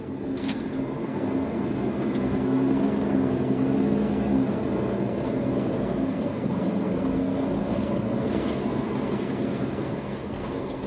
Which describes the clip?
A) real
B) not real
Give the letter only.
B